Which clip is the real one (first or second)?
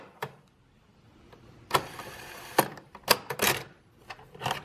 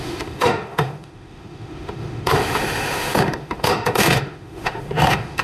first